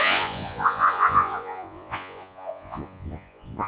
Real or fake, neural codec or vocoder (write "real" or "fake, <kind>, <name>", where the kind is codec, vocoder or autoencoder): fake, vocoder, Vocos